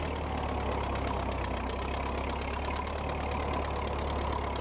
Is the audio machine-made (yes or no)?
no